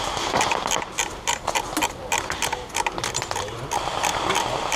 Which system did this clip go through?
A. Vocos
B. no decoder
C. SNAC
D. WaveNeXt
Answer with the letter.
B